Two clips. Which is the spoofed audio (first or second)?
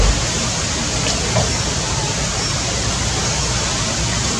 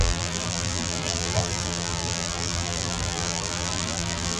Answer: second